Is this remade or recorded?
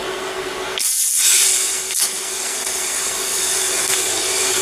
remade